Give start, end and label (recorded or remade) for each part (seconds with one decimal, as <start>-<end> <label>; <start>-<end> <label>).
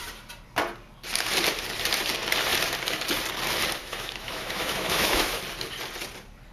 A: 0.0-3.8 recorded; 3.8-5.4 remade; 5.4-6.5 recorded